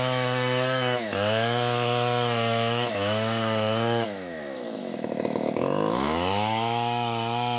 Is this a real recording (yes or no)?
no